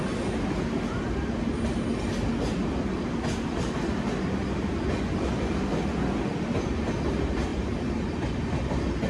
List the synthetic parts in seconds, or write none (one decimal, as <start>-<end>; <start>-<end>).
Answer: 7.5-8.3